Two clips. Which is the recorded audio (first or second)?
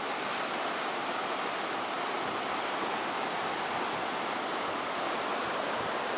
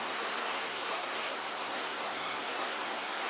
first